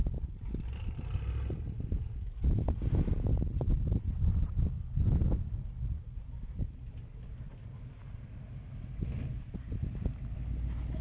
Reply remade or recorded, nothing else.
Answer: recorded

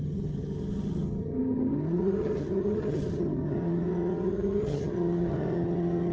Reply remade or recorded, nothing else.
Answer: remade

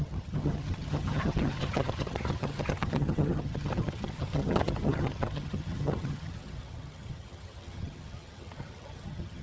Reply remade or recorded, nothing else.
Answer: remade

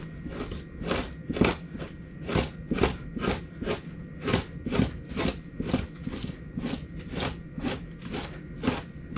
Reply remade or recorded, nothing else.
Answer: recorded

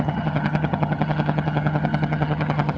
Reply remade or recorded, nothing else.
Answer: remade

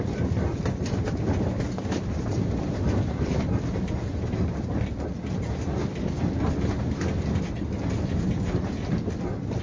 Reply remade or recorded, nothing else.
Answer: recorded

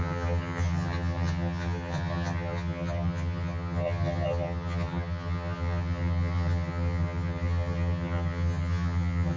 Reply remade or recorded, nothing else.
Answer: remade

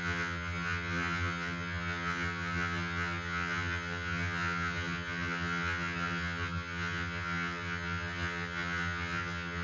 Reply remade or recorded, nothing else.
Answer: remade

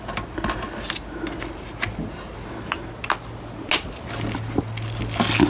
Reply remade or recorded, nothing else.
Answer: recorded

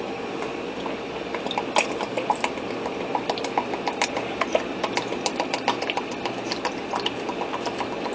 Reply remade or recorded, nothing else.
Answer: recorded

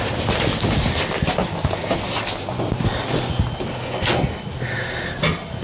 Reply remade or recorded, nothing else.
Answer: recorded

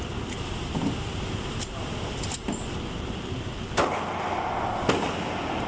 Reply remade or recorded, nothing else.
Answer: recorded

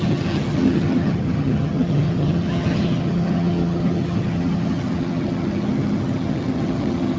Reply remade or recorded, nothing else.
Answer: remade